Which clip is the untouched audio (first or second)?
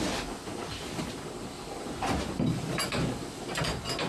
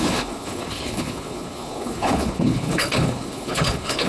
first